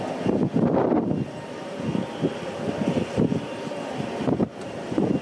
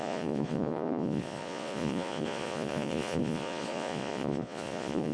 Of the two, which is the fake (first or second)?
second